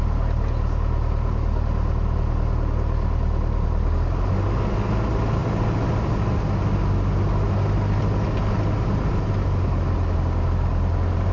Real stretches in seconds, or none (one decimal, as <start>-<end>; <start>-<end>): 0.0-11.3